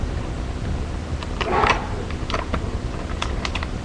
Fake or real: real